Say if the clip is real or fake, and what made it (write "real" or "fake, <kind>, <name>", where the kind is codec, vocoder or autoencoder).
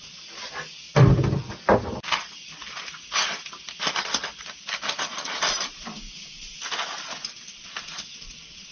real